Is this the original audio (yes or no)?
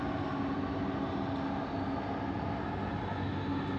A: yes